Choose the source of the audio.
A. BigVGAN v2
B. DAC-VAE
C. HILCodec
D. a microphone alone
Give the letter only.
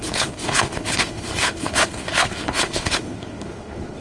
C